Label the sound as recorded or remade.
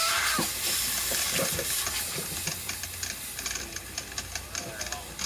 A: remade